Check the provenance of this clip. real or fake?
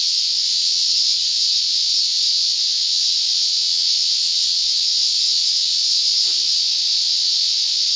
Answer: fake